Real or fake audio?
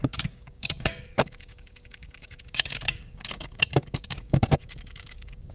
fake